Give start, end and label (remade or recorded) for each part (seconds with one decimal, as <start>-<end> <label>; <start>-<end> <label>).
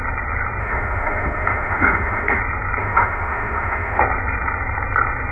0.0-0.6 recorded; 0.6-2.4 remade; 2.4-2.8 recorded; 2.8-4.0 remade; 4.0-5.3 recorded